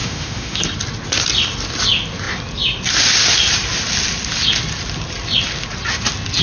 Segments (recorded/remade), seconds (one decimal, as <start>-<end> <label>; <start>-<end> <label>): 0.0-0.6 remade; 0.6-6.4 recorded